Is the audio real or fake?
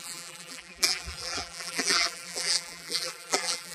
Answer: fake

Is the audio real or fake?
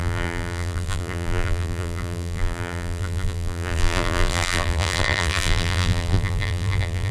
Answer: fake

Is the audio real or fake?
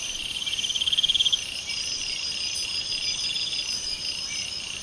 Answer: fake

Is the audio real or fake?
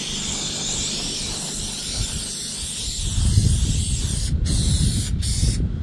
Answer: real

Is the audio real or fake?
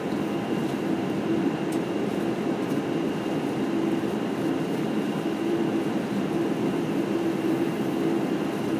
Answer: fake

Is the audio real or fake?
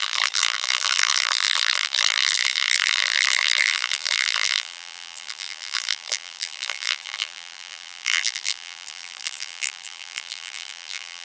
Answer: fake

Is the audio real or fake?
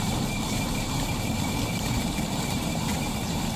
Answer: fake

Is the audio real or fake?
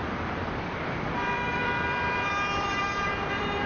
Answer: fake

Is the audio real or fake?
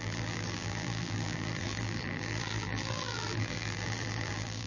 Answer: fake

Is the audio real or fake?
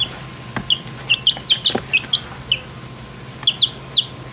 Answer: real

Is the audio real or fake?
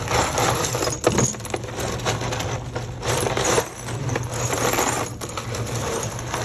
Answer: real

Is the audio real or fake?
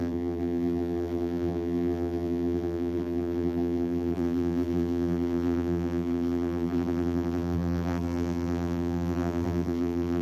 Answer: fake